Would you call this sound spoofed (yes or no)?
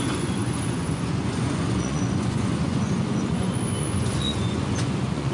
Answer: yes